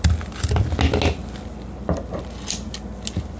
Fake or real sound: real